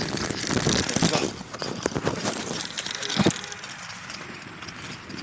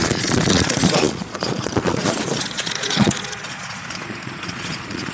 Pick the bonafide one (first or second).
first